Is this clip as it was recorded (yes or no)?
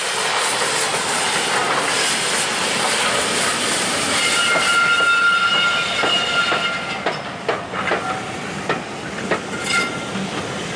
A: yes